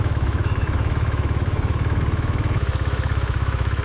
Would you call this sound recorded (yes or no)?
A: no